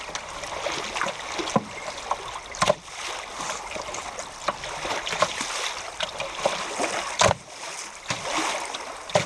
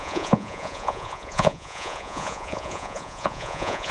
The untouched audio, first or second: first